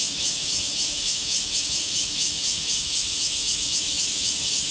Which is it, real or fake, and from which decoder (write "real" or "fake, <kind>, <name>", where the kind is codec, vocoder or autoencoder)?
fake, autoencoder, DAC-VAE